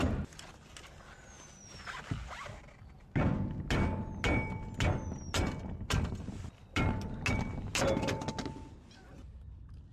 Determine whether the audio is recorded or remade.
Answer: recorded